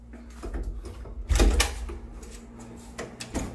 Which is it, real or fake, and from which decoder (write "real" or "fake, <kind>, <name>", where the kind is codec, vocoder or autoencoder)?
real